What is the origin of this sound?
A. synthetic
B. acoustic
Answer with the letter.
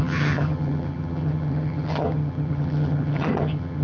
A